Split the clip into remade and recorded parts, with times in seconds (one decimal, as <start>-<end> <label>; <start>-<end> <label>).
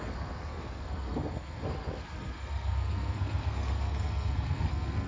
0.0-5.1 remade